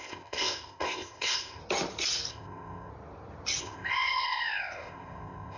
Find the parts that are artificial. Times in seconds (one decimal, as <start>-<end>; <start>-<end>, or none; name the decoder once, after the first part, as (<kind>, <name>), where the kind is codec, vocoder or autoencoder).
0.0-1.6 (codec, ZipCodec); 2.3-2.9; 3.6-5.6